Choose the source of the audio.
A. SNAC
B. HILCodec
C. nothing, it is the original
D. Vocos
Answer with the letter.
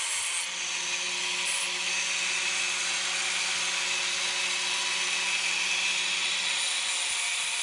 C